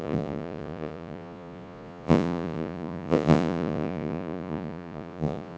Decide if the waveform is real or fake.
fake